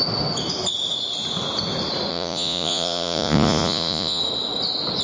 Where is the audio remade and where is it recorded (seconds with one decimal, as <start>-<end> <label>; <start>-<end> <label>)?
0.0-2.1 recorded; 2.1-4.2 remade; 4.2-5.0 recorded